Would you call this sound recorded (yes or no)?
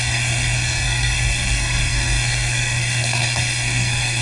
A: no